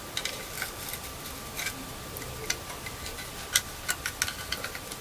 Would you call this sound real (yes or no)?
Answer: yes